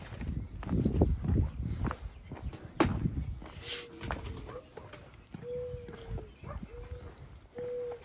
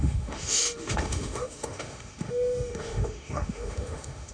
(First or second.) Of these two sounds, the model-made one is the second